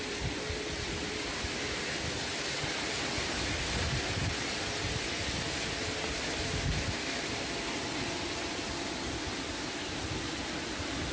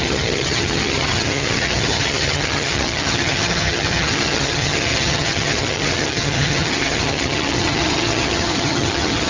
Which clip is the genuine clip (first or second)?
first